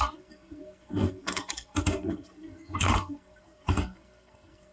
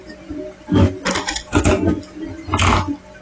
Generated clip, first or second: first